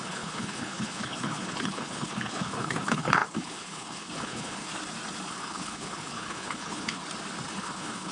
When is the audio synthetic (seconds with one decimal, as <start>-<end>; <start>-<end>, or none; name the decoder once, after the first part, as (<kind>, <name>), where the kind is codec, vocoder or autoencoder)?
0.0-4.7 (codec, HILCodec); 5.3-7.0; 7.6-8.1